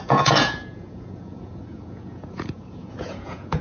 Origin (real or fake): fake